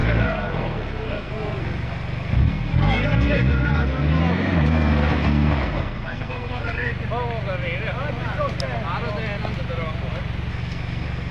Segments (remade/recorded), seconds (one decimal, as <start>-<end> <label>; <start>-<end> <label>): 0.0-4.2 remade; 4.2-4.7 recorded; 4.7-6.9 remade; 6.9-10.5 recorded; 10.5-11.3 remade

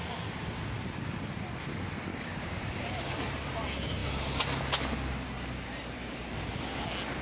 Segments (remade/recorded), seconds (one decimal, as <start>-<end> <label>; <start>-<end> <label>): 0.0-2.1 recorded; 2.1-2.8 remade; 2.8-7.2 recorded

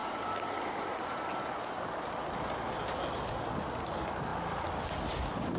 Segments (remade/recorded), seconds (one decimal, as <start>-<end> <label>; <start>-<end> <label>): 0.0-5.6 recorded